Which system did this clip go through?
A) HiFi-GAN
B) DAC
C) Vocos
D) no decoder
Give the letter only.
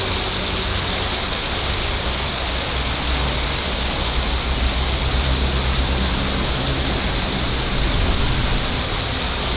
D